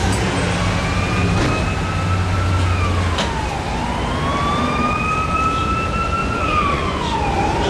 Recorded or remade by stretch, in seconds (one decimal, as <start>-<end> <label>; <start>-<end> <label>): 0.0-6.2 recorded; 6.2-7.2 remade; 7.2-7.7 recorded